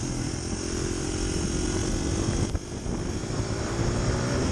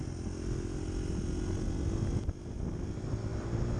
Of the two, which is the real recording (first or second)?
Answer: second